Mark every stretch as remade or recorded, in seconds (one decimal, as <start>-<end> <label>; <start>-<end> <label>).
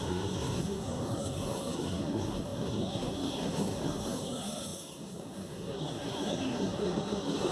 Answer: 0.0-7.5 remade